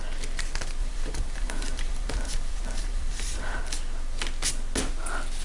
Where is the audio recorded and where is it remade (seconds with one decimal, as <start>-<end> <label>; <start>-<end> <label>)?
0.0-0.8 recorded; 0.8-3.6 remade; 3.6-5.4 recorded